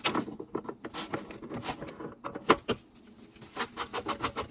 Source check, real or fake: real